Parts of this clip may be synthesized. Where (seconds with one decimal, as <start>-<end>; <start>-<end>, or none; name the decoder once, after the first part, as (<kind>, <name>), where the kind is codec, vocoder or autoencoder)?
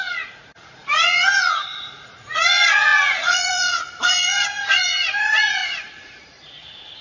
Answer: 0.0-7.0 (vocoder, Vocos)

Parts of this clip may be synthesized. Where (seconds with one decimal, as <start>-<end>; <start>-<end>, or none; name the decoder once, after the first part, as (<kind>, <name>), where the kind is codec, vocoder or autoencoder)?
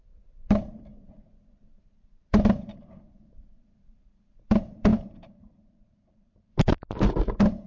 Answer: 0.0-7.7 (vocoder, BigVGAN v2)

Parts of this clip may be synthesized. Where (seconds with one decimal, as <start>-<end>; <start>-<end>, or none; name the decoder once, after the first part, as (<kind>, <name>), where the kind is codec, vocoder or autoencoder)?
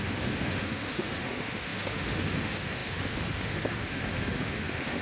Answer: 0.0-5.0 (autoencoder, DAC-VAE)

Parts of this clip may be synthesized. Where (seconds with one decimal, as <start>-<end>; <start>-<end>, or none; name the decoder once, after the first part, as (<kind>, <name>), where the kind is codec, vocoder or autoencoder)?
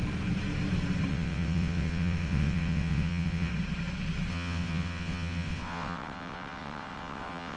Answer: 1.1-3.5 (vocoder, WaveNeXt); 4.3-7.6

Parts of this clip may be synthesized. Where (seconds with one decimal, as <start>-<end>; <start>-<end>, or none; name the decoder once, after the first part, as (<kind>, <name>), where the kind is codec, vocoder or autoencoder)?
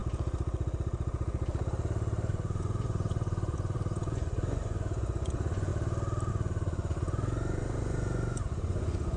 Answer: 2.3-5.7 (vocoder, Vocos); 6.3-9.2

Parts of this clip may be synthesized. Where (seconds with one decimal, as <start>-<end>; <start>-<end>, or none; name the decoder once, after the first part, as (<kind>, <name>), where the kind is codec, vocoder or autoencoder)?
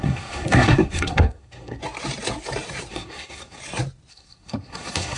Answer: 0.0-1.8 (codec, SNAC); 2.9-3.6; 4.1-5.2